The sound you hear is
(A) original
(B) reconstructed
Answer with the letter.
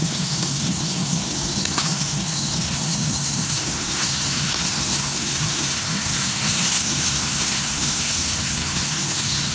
B